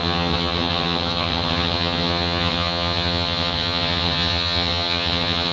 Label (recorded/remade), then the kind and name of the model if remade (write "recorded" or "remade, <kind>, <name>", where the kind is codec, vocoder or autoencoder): remade, vocoder, HiFi-GAN